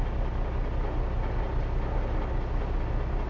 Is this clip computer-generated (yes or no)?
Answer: no